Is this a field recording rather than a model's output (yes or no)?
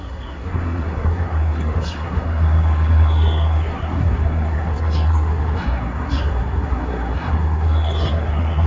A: no